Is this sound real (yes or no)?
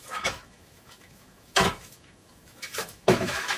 no